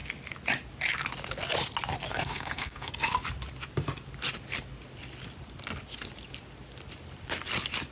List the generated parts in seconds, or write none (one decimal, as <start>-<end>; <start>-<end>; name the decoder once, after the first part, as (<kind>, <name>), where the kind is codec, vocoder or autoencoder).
2.1-2.9 (codec, SNAC)